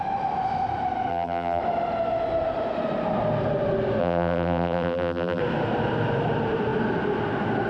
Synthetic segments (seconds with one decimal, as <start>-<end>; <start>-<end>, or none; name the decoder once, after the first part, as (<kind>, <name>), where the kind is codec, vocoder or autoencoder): 1.1-1.6 (vocoder, BigVGAN v2); 4.0-5.4

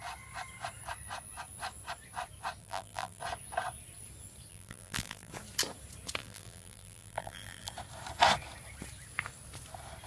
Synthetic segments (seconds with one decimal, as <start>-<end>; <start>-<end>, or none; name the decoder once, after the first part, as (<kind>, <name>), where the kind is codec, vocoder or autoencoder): 2.6-3.2 (vocoder, BigVGAN v2); 4.5-5.3; 6.2-7.7